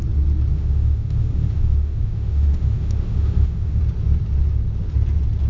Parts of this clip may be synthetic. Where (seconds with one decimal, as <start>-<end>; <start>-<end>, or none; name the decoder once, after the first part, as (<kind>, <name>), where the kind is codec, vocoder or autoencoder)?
0.5-3.8 (autoencoder, DAC-VAE)